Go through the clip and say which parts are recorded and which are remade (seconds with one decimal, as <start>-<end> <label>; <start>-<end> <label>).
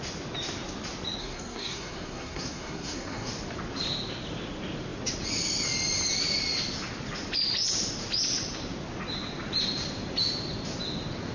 0.0-1.2 recorded; 1.2-3.3 remade; 3.3-11.3 recorded